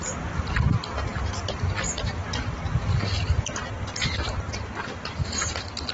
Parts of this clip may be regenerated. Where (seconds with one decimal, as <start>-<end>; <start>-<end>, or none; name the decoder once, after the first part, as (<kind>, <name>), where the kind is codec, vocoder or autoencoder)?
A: none